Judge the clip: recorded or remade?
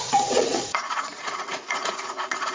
remade